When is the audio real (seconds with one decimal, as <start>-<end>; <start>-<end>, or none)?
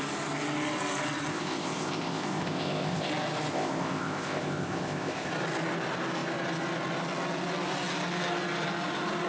0.0-1.3; 3.1-3.5; 5.3-9.3